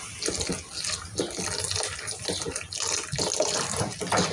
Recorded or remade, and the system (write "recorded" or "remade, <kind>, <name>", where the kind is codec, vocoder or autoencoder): recorded